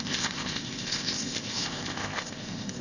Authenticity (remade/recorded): remade